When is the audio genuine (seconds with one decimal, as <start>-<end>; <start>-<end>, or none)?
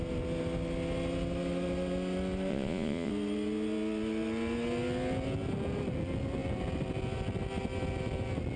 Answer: 0.0-2.5; 3.1-8.6